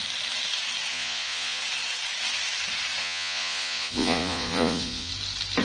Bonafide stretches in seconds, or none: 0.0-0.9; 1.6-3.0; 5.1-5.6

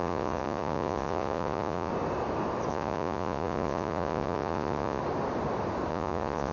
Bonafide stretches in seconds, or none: 1.9-2.7; 5.0-5.9

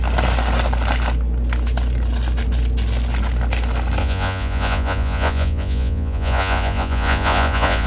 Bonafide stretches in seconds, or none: 0.0-4.0

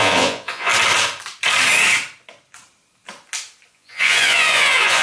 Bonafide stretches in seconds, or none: 0.7-3.7